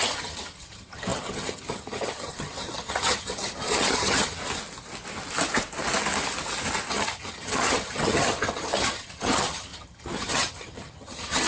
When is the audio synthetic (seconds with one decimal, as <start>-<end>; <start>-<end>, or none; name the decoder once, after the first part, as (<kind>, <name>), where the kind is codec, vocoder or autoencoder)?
0.0-4.4 (vocoder, HiFi-GAN); 6.9-11.5